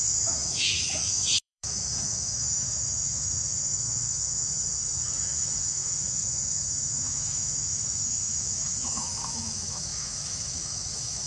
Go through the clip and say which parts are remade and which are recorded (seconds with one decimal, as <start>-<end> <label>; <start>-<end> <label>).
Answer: 0.0-11.3 remade